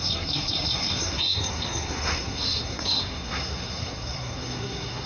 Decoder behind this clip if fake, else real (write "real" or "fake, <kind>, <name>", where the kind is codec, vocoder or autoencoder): fake, codec, SNAC